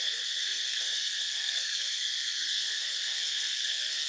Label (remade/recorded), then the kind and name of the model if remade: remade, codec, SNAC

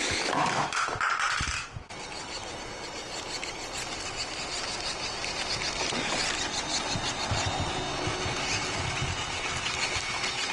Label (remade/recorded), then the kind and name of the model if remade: recorded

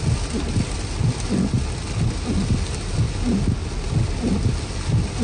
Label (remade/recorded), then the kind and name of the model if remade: recorded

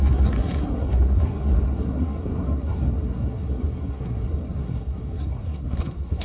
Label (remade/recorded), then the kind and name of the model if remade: remade, codec, SNAC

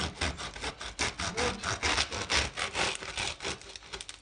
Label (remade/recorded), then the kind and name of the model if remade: recorded